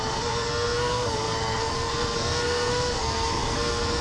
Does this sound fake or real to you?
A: fake